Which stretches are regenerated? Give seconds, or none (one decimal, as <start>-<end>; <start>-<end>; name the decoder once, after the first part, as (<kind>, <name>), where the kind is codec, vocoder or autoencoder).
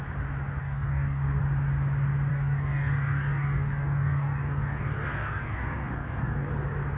0.6-1.4 (codec, DAC); 2.3-6.5